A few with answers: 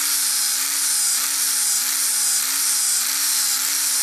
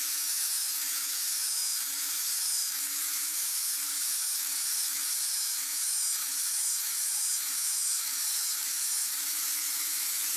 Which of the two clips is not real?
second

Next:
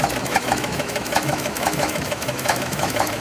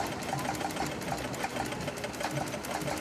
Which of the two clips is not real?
first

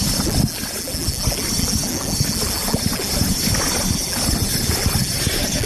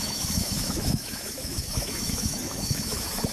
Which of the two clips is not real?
second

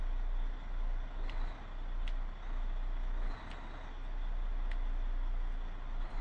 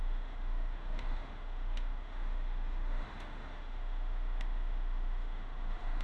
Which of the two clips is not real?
second